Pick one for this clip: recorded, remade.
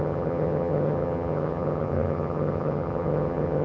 remade